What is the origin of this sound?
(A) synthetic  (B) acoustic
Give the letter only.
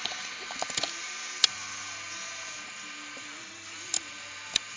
B